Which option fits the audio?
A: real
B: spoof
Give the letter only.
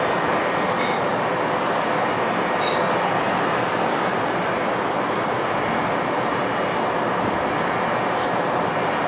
A